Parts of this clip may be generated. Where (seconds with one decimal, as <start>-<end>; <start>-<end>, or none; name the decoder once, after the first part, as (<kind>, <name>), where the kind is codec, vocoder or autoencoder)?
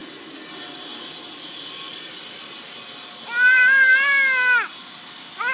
none